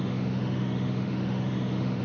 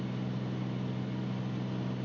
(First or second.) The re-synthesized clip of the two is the first